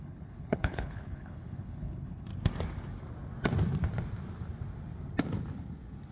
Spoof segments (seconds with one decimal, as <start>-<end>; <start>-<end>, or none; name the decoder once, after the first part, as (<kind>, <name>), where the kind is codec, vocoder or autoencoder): 0.0-2.3 (codec, HILCodec)